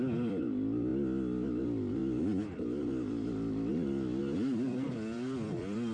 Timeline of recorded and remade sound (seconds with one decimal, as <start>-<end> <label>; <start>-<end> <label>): 0.0-0.9 remade; 0.9-1.6 recorded; 1.6-3.7 remade; 3.7-4.2 recorded; 4.2-5.9 remade